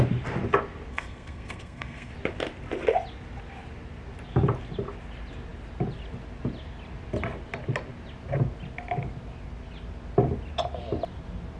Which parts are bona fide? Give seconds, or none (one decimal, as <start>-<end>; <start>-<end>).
0.0-0.9; 2.1-11.6